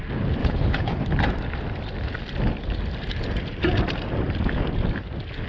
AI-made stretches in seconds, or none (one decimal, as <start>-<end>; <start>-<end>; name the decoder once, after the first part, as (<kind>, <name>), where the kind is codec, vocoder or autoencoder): 0.4-1.0 (codec, HILCodec)